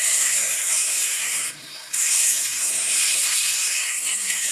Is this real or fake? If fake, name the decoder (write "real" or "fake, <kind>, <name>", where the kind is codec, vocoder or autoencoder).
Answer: fake, codec, SNAC